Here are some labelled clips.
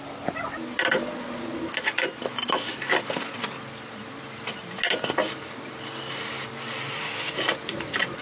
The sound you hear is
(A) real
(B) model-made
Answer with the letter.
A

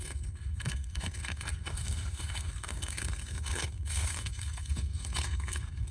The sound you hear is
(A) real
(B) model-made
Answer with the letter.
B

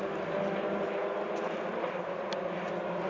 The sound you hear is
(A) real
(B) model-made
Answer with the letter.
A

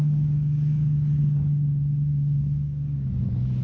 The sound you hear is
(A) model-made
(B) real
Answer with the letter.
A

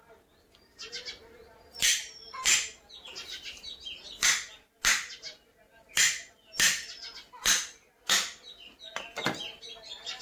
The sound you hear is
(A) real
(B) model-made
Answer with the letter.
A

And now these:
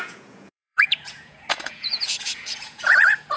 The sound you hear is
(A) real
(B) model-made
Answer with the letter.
B